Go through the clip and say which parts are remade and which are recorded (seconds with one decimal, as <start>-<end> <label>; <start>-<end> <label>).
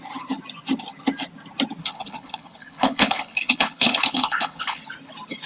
0.0-1.8 recorded; 1.8-4.8 remade; 4.8-5.5 recorded